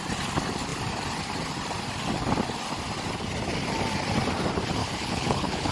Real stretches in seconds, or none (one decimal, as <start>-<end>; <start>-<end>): 0.0-4.8